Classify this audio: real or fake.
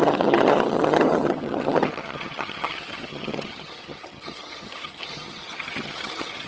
fake